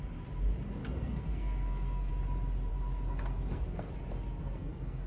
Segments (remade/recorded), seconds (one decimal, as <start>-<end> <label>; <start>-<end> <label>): 0.0-0.8 recorded; 0.8-2.1 remade; 2.1-2.7 recorded; 2.7-3.9 remade; 3.9-4.4 recorded; 4.4-5.1 remade